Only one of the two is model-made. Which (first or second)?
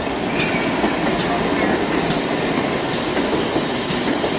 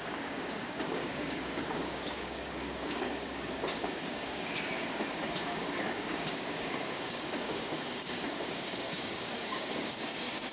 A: second